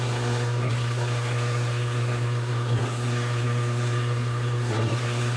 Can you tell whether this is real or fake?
fake